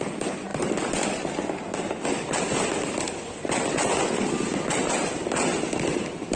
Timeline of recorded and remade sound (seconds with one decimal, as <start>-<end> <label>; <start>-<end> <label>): 0.0-6.4 recorded

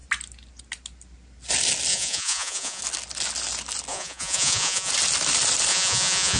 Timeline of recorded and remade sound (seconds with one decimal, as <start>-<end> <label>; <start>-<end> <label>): 0.0-1.9 recorded; 1.9-2.8 remade; 2.8-3.9 recorded; 3.9-4.9 remade; 4.9-5.7 recorded; 5.7-6.4 remade